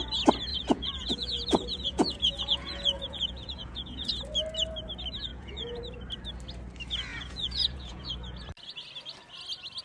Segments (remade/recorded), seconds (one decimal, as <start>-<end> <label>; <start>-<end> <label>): 0.0-0.5 recorded; 0.5-4.1 remade; 4.1-5.3 recorded; 5.3-5.8 remade; 5.8-7.1 recorded; 7.1-8.1 remade; 8.1-9.8 recorded

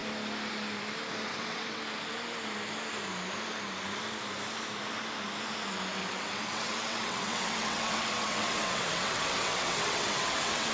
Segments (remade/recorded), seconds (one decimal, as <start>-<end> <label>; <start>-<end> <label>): 0.0-1.3 recorded; 1.3-1.8 remade; 1.8-6.0 recorded; 6.0-10.7 remade

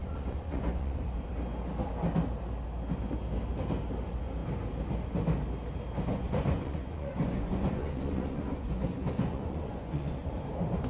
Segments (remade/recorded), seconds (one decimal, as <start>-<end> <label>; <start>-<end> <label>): 0.0-1.3 remade; 1.3-6.1 recorded; 6.1-10.3 remade; 10.3-10.9 recorded

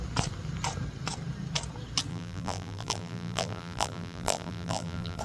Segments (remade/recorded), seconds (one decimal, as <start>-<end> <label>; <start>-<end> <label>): 0.0-2.1 recorded; 2.1-5.2 remade

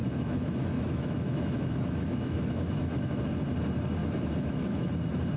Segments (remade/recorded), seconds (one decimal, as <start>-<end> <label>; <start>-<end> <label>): 0.0-3.2 remade; 3.2-4.0 recorded; 4.0-4.9 remade; 4.9-5.4 recorded

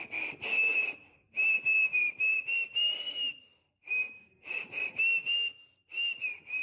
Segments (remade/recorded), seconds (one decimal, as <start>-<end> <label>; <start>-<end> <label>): 0.0-0.7 recorded; 0.7-4.2 remade; 4.2-6.6 recorded

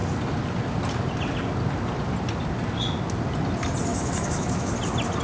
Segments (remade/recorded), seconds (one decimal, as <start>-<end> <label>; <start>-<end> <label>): 0.0-3.9 recorded; 3.9-4.7 remade; 4.7-5.2 recorded

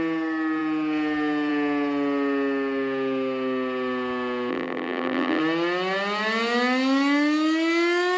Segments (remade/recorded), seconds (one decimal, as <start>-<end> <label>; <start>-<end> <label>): 0.0-4.5 recorded; 4.5-5.4 remade; 5.4-8.2 recorded